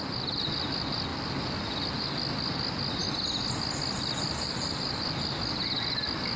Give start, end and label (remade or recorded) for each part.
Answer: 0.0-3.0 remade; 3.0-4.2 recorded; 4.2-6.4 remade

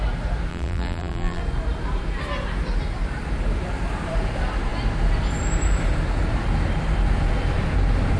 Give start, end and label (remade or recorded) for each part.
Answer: 0.0-0.5 recorded; 0.5-1.4 remade; 1.4-8.2 recorded

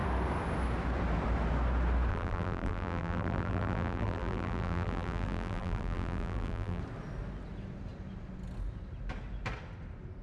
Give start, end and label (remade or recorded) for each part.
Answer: 0.0-2.1 recorded; 2.1-6.8 remade; 6.8-10.2 recorded

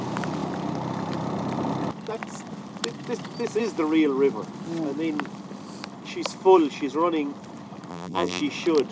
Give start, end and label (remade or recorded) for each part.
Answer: 0.0-7.9 recorded; 7.9-8.4 remade; 8.4-8.9 recorded

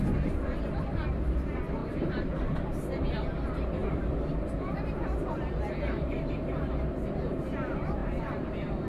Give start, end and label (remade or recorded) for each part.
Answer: 0.0-1.8 recorded; 1.8-2.5 remade; 2.5-3.8 recorded; 3.8-6.5 remade; 6.5-8.0 recorded; 8.0-8.9 remade

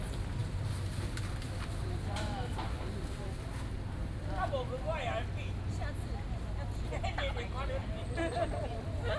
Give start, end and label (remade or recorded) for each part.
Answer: 0.0-7.8 recorded; 7.8-9.2 remade